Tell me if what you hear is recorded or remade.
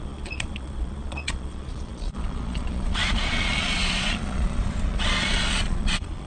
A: remade